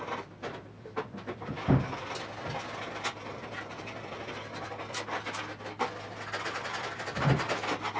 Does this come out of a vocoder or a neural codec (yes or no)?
no